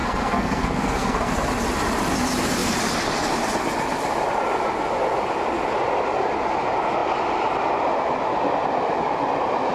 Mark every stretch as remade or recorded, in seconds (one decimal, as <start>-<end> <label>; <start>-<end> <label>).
0.0-1.3 remade; 1.3-9.7 recorded

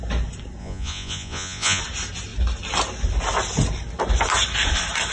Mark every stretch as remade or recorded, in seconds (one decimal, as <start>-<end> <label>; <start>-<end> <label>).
0.0-0.6 recorded; 0.6-1.8 remade; 1.8-5.1 recorded

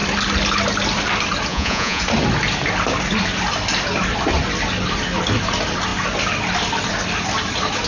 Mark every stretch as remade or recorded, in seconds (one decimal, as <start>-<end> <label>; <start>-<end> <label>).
0.0-1.5 recorded; 1.5-2.0 remade; 2.0-7.9 recorded

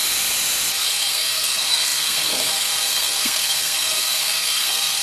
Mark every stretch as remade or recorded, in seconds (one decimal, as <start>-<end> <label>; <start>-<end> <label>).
0.0-0.8 recorded; 0.8-5.0 remade

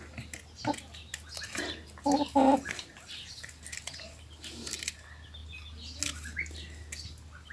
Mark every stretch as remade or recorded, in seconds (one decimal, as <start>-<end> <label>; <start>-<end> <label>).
0.0-7.5 recorded

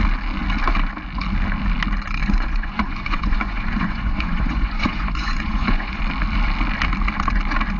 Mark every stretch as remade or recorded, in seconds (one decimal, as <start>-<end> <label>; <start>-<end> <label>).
0.0-2.2 recorded; 2.2-6.0 remade; 6.0-7.8 recorded